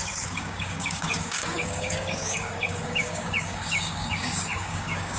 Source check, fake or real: fake